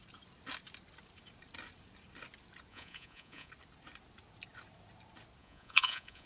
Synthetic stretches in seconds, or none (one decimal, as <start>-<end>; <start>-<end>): 2.7-3.5; 5.4-6.3